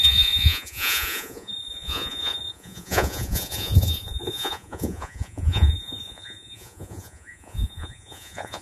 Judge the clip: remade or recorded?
remade